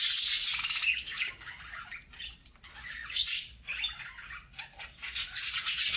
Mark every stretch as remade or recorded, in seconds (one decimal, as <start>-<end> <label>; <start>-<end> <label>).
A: 0.0-0.8 recorded; 0.8-1.5 remade; 1.5-6.0 recorded